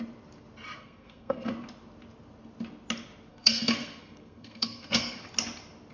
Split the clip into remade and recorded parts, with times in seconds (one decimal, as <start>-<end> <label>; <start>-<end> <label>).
0.0-0.8 recorded; 0.8-1.5 remade; 1.5-3.3 recorded; 3.3-5.2 remade; 5.2-5.9 recorded